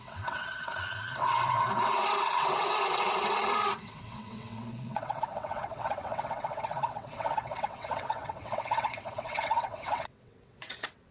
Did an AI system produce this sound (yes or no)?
yes